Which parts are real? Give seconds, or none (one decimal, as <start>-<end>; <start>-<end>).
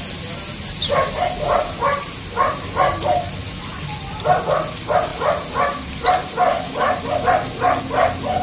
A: 0.0-8.4